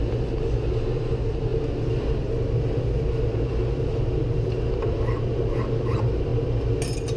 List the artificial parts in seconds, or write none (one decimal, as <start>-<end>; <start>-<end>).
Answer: none